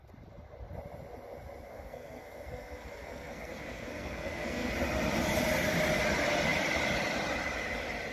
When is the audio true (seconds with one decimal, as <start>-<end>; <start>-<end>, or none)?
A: 0.0-1.7; 4.7-8.1